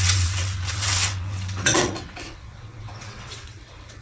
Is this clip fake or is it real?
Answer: fake